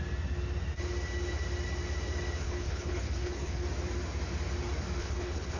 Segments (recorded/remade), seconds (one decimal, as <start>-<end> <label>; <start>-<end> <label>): 0.0-2.4 recorded; 2.4-3.6 remade; 3.6-5.0 recorded; 5.0-5.6 remade